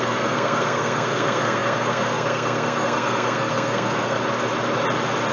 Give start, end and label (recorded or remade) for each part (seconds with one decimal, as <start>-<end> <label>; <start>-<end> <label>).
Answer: 0.0-4.2 remade; 4.2-5.3 recorded